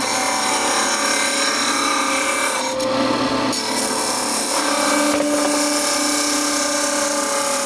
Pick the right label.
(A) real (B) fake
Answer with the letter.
A